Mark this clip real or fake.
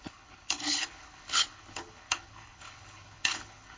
fake